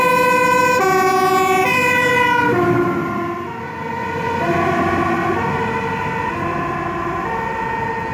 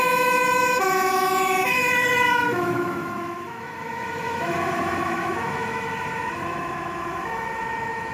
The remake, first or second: second